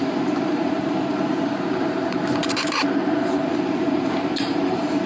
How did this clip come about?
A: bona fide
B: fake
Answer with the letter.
B